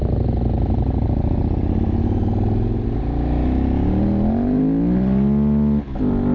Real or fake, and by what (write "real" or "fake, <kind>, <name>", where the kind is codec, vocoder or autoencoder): real